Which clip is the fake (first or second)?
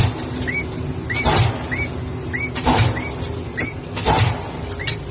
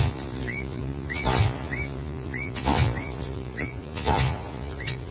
second